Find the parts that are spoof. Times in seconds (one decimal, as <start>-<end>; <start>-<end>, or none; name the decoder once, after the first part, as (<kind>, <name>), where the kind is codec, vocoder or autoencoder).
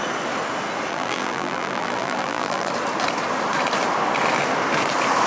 0.9-2.7 (vocoder, BigVGAN v2)